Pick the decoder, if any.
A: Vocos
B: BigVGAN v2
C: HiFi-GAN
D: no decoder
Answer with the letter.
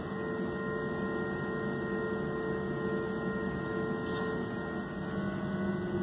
D